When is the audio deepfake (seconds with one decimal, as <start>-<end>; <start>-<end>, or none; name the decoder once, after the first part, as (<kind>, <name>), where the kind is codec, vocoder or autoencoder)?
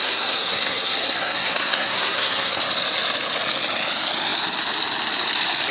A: 0.0-2.6 (codec, SNAC)